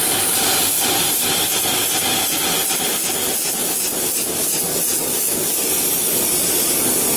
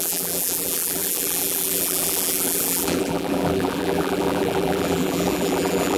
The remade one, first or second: second